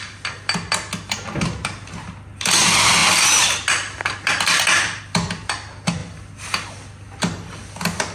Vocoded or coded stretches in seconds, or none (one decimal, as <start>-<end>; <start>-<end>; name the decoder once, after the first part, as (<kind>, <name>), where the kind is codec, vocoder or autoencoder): none